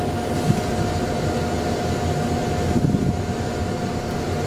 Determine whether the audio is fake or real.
real